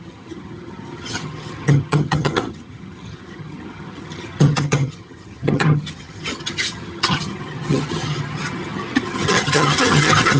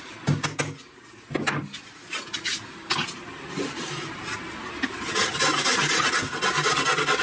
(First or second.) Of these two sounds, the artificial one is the first